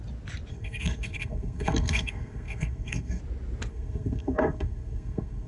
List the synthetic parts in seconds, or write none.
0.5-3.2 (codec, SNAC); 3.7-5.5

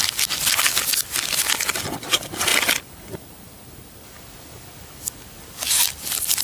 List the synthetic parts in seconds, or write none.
none

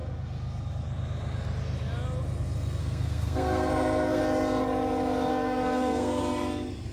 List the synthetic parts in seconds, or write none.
2.8-4.2 (codec, SNAC); 5.3-6.2

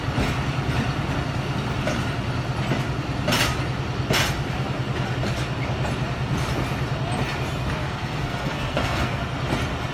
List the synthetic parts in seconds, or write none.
7.8-9.2 (codec, SNAC)

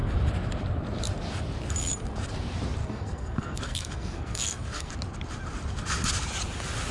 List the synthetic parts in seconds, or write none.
2.8-4.9 (codec, SNAC)

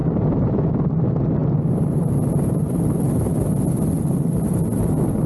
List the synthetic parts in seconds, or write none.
none